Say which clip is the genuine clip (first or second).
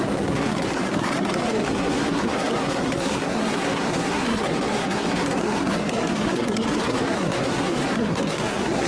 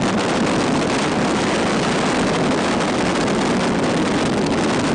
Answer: second